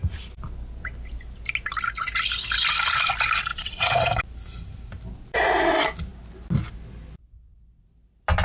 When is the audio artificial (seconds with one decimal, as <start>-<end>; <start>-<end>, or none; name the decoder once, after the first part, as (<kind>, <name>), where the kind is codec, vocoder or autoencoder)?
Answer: 3.5-4.2 (vocoder, WaveNeXt)